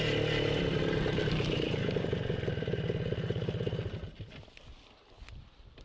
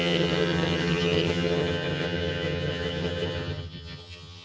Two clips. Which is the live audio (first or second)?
first